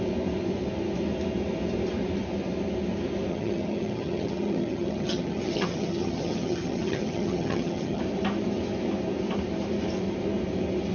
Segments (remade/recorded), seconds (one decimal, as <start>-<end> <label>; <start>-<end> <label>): 0.0-3.3 recorded; 3.3-8.0 remade; 8.0-10.9 recorded